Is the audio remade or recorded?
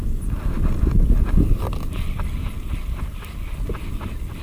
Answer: remade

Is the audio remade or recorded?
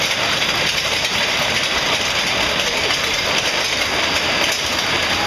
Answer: recorded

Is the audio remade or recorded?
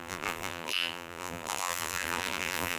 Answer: remade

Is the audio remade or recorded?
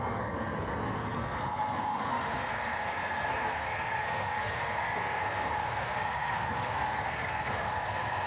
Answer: remade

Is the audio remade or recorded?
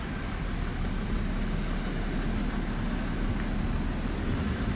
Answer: recorded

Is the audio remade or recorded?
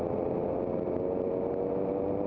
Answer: recorded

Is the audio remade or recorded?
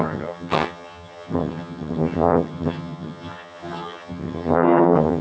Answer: remade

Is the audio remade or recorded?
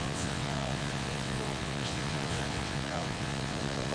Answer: remade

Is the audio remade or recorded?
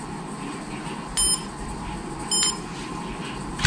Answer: recorded